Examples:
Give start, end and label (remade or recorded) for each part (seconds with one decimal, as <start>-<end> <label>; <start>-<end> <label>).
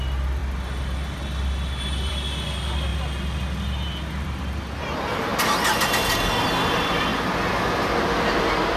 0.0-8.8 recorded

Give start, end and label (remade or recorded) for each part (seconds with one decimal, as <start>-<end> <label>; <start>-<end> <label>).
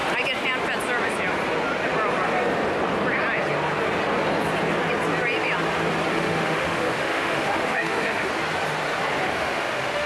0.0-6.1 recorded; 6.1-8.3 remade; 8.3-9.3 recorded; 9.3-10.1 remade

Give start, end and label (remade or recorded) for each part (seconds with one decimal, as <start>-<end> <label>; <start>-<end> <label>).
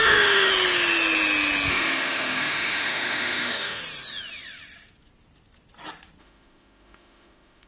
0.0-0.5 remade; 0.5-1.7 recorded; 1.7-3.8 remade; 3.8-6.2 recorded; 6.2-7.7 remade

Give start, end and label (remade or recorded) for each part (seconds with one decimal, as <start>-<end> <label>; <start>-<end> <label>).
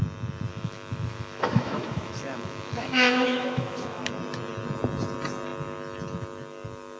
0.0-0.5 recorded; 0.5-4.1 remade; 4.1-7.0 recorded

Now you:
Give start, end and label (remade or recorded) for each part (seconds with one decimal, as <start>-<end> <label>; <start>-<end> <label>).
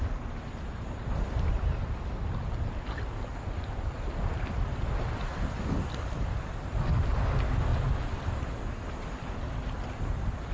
0.0-10.5 recorded